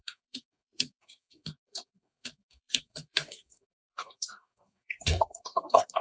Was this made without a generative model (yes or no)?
no